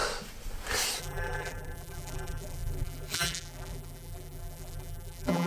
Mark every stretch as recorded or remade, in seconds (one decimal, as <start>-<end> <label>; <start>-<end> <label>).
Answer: 0.0-1.0 recorded; 1.0-5.5 remade

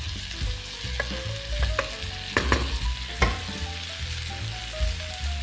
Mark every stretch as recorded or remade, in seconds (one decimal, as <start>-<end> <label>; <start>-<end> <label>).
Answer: 0.0-5.4 recorded

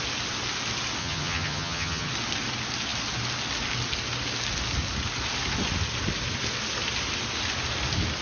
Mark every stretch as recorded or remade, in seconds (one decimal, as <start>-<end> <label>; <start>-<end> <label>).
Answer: 0.0-1.0 recorded; 1.0-2.1 remade; 2.1-8.2 recorded

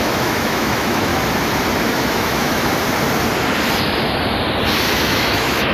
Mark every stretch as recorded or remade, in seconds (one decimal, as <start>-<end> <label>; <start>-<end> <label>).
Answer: 0.0-1.1 remade; 1.1-1.9 recorded; 1.9-2.7 remade; 2.7-4.9 recorded; 4.9-5.7 remade

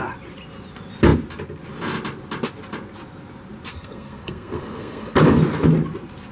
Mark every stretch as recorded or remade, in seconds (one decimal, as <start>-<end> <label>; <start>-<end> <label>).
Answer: 0.0-3.7 recorded; 3.7-5.4 remade; 5.4-6.3 recorded

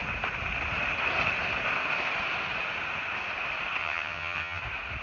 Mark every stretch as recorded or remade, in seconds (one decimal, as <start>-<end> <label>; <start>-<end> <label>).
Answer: 0.0-3.8 recorded; 3.8-4.6 remade; 4.6-5.0 recorded

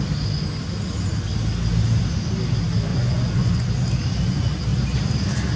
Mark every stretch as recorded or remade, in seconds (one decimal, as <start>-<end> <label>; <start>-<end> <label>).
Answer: 0.0-2.9 recorded; 2.9-3.7 remade; 3.7-5.6 recorded

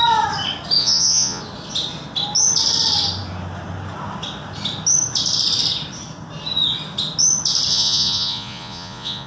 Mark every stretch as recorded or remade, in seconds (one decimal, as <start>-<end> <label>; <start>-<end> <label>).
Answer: 0.0-0.8 recorded; 0.8-1.4 remade; 1.4-7.7 recorded; 7.7-9.3 remade